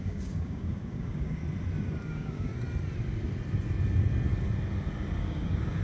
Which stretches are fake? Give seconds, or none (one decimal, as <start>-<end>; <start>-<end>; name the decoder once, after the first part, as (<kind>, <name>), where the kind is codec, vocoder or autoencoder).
0.0-1.4 (codec, DAC); 2.0-2.5; 5.2-5.8